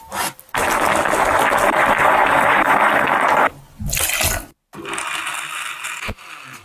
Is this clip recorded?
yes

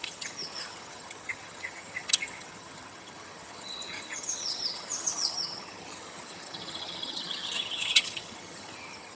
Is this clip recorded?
no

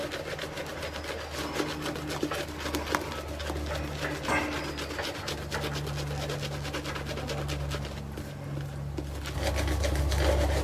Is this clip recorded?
yes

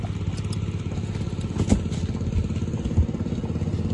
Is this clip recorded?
yes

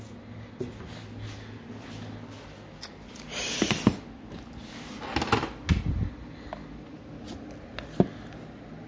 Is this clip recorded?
yes